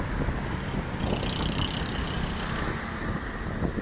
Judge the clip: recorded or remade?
recorded